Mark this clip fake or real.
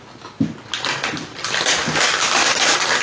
real